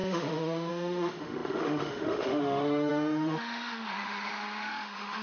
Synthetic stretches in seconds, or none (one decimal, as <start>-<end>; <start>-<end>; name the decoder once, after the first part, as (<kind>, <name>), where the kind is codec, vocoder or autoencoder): 0.0-5.2 (autoencoder, DAC-VAE)